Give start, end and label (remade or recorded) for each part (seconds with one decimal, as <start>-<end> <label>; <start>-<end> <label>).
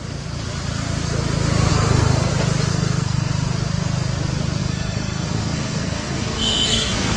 0.0-1.7 recorded; 1.7-2.3 remade; 2.3-2.7 recorded; 2.7-3.3 remade; 3.3-4.6 recorded; 4.6-7.2 remade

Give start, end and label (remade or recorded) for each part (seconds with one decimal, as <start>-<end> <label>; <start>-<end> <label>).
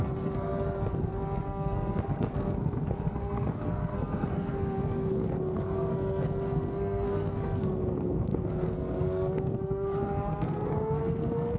0.0-11.6 remade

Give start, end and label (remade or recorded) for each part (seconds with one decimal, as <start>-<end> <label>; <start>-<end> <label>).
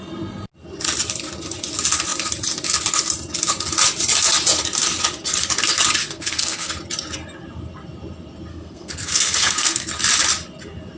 0.0-6.0 recorded; 6.0-6.7 remade; 6.7-8.5 recorded; 8.5-9.9 remade; 9.9-11.0 recorded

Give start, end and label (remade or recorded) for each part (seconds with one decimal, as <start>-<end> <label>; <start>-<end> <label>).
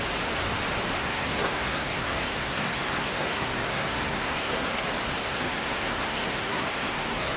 0.0-0.9 recorded; 0.9-4.8 remade; 4.8-5.2 recorded; 5.2-7.4 remade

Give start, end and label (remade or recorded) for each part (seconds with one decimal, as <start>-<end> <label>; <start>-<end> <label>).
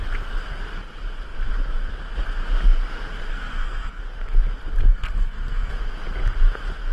0.0-3.3 recorded; 3.3-4.0 remade; 4.0-4.9 recorded; 4.9-5.7 remade; 5.7-6.9 recorded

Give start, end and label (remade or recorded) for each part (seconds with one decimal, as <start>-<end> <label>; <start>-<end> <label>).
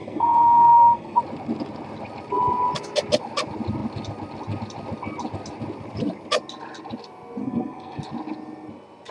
0.0-1.2 remade; 1.2-7.4 recorded; 7.4-8.0 remade; 8.0-9.1 recorded